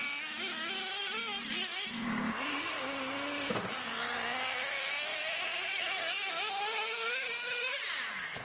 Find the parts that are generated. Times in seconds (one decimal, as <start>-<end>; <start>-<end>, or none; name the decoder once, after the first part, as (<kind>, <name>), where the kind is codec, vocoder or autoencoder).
5.1-5.8 (vocoder, BigVGAN v2)